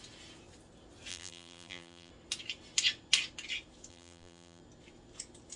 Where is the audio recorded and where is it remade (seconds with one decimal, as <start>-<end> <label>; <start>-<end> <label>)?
0.0-1.1 recorded; 1.1-2.1 remade; 2.1-3.9 recorded; 3.9-4.6 remade; 4.6-5.6 recorded